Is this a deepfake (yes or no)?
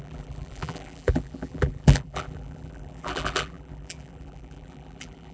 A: yes